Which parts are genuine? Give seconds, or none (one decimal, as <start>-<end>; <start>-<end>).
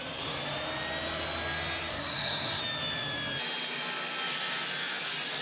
0.0-1.9; 2.6-5.4